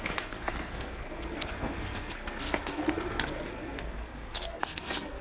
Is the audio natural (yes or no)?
no